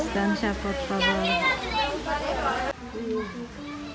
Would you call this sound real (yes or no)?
yes